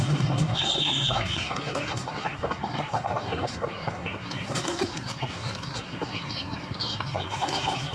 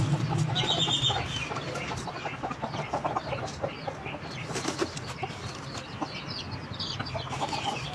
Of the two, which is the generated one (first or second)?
first